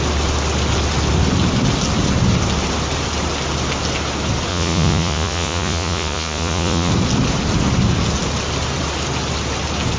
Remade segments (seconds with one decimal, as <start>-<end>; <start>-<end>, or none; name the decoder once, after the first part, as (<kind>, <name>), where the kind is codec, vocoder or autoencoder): 4.5-6.9 (vocoder, Vocos)